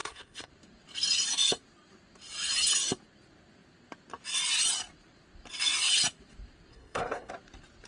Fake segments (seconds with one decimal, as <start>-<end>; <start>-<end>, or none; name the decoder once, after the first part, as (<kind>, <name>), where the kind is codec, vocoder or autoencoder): 0.0-0.5 (codec, SNAC); 6.7-7.3